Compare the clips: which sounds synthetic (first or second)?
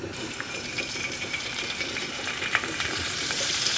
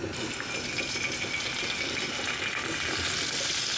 first